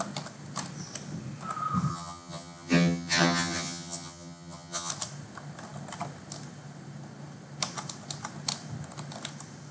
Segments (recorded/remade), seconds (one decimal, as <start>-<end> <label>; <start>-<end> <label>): 0.0-1.9 recorded; 1.9-4.9 remade; 4.9-9.7 recorded